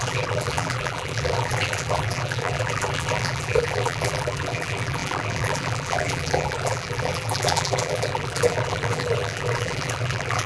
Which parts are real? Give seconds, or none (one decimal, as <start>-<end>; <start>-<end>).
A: none